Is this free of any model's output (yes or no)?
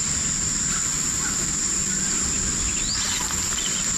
yes